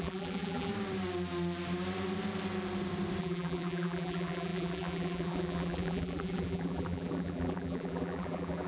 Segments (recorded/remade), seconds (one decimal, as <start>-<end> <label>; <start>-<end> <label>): 0.0-0.7 remade; 0.7-3.2 recorded; 3.2-8.7 remade